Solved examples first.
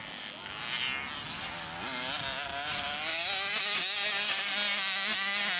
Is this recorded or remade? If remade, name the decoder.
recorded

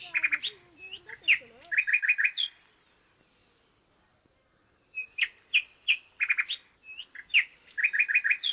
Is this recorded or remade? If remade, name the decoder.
recorded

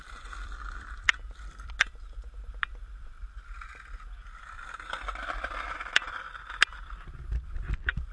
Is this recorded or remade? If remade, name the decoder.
remade, vocoder, BigVGAN v2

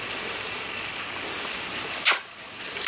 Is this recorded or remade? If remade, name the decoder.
recorded